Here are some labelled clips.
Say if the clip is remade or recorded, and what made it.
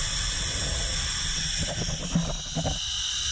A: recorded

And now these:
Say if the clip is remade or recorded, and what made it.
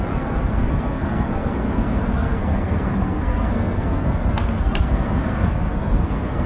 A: remade, codec, SNAC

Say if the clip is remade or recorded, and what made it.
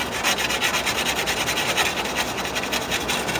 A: recorded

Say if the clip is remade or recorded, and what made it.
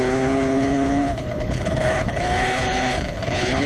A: remade, codec, HILCodec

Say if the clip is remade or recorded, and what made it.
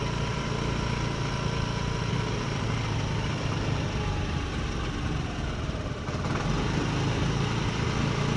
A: recorded